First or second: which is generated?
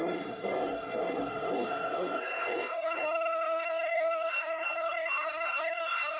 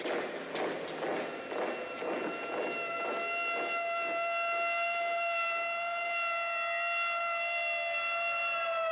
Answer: first